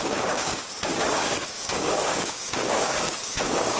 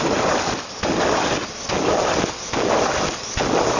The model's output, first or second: first